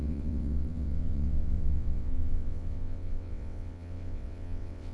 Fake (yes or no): yes